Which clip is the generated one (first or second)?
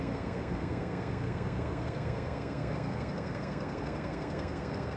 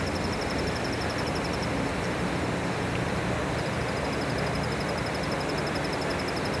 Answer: first